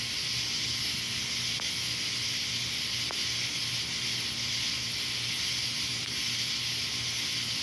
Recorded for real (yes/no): yes